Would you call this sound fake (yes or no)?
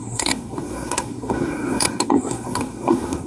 yes